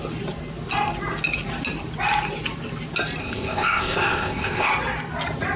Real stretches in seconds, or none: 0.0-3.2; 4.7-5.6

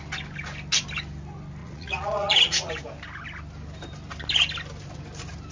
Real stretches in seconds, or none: 0.0-1.6; 2.7-5.5

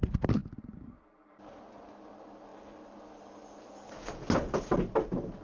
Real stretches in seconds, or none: 0.0-5.4

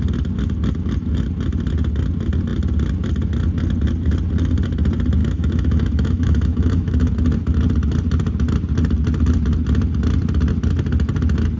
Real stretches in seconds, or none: 0.0-5.2; 7.1-11.6

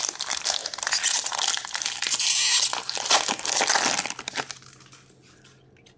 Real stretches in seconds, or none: 0.0-6.0

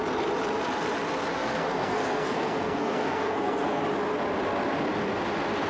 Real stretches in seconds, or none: 0.0-1.3; 3.8-5.7

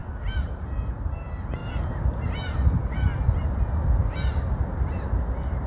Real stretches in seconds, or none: 0.9-1.6; 3.0-5.7

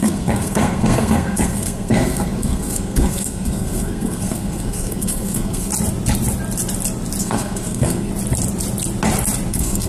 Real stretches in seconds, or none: 5.7-7.2; 8.1-9.5